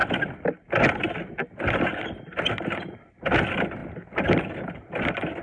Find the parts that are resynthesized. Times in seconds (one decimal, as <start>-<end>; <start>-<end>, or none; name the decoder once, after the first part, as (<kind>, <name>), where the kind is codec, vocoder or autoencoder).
none